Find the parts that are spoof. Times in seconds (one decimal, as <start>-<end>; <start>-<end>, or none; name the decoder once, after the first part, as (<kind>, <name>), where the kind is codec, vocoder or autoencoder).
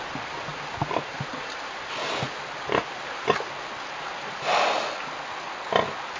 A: none